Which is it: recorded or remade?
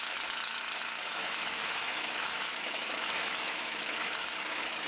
remade